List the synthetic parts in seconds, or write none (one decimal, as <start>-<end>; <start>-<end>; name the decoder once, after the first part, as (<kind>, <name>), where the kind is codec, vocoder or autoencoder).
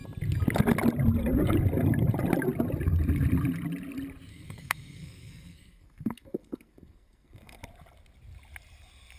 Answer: 4.3-7.6 (codec, SNAC)